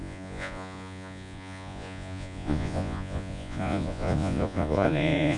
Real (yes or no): no